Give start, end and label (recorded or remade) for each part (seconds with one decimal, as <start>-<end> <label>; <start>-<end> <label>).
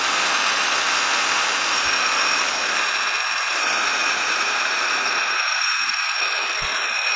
0.0-4.0 recorded; 4.0-6.2 remade; 6.2-7.2 recorded